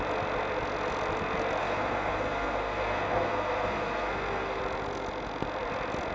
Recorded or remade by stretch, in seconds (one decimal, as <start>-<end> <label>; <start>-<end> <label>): 0.0-1.6 recorded; 1.6-4.6 remade; 4.6-6.1 recorded